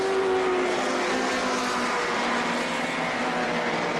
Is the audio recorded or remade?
recorded